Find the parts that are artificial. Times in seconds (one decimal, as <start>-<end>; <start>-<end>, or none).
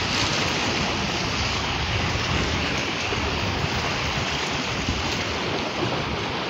1.2-3.6